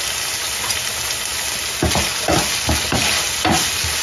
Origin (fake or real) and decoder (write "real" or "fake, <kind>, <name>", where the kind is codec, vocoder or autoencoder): real